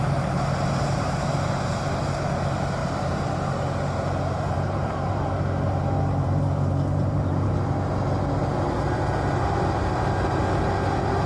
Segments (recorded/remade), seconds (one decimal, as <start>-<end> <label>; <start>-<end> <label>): 0.0-2.8 recorded; 2.8-7.5 remade; 7.5-11.3 recorded